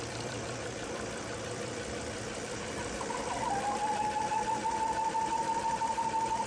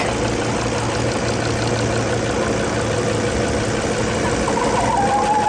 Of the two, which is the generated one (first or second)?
first